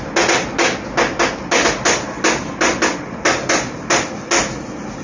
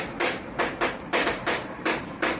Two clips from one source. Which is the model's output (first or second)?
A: second